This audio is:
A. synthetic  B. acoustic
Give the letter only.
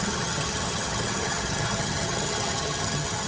A